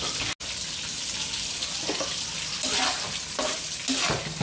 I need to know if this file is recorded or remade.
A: recorded